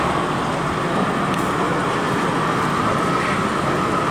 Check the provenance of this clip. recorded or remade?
recorded